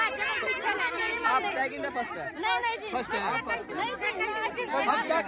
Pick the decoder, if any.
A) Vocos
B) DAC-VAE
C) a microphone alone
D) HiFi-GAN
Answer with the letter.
C